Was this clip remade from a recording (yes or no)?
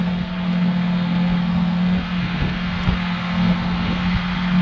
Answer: yes